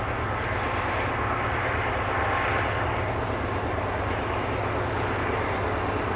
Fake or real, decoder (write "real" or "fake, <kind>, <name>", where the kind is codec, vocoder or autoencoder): real